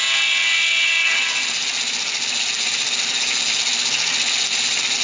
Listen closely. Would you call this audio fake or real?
real